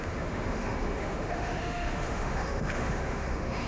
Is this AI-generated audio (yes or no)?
yes